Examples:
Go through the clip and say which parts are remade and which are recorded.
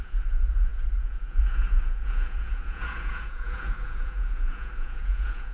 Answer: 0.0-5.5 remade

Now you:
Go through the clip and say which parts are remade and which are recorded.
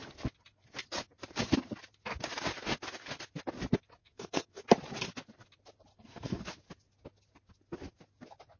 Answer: 0.0-4.0 recorded; 4.0-4.6 remade; 4.6-5.9 recorded; 5.9-6.4 remade; 6.4-8.6 recorded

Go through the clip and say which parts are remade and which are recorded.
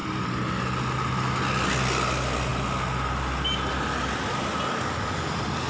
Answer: 0.0-5.7 recorded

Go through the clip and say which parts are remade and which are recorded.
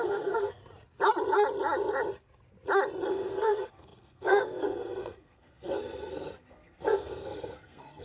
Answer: 0.0-0.6 remade; 0.6-3.1 recorded; 3.1-8.0 remade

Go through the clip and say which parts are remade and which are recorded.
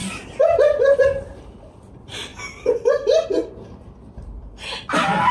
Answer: 0.0-1.0 recorded; 1.0-2.3 remade; 2.3-3.8 recorded; 3.8-5.3 remade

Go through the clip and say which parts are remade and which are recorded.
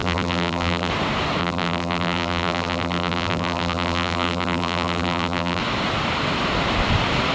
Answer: 0.0-0.9 remade; 0.9-1.4 recorded; 1.4-5.6 remade; 5.6-7.3 recorded